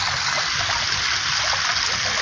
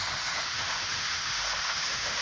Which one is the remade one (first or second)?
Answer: second